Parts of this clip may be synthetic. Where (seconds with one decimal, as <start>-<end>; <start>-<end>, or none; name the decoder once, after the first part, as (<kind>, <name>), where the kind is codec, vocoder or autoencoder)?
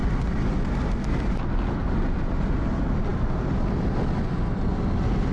none